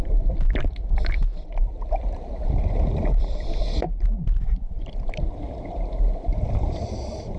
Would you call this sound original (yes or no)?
no